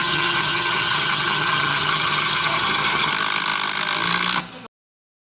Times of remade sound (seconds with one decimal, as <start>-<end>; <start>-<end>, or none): 0.0-3.1